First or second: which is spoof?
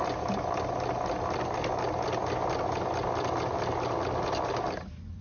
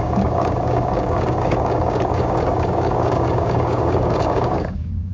second